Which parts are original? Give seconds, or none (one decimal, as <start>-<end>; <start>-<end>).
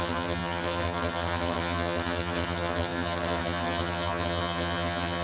none